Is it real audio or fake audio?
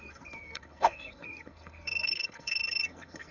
fake